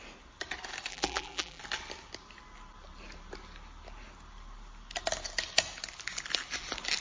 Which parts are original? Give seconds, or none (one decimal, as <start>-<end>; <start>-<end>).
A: 0.0-0.9; 1.6-7.0